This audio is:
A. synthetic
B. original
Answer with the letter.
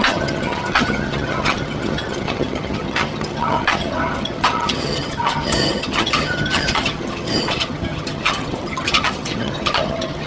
A